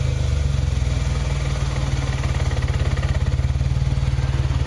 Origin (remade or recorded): recorded